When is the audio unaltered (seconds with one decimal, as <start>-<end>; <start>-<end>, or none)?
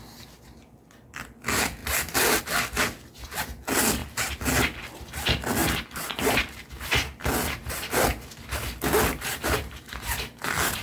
0.0-10.8